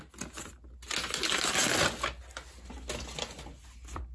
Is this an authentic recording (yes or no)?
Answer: yes